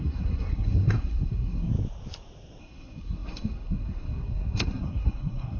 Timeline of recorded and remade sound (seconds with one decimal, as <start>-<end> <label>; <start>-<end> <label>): 0.0-1.7 remade; 1.7-2.6 recorded; 2.6-5.6 remade